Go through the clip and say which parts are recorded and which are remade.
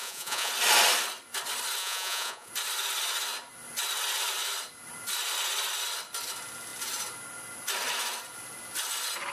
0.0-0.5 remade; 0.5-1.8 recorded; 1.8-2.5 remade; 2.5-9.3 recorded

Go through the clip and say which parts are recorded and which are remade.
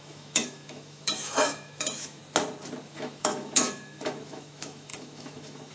0.0-2.2 remade; 2.2-2.8 recorded; 2.8-5.7 remade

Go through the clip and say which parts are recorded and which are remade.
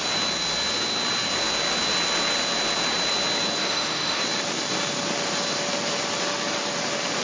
0.0-3.6 recorded; 3.6-4.2 remade; 4.2-7.2 recorded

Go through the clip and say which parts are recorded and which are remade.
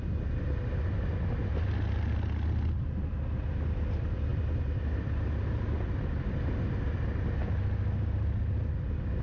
0.0-9.2 recorded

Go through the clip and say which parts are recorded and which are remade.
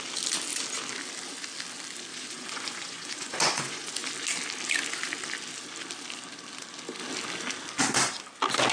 0.0-2.1 recorded; 2.1-4.1 remade; 4.1-8.7 recorded